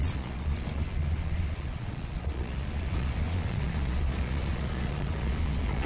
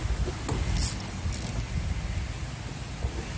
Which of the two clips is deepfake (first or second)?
first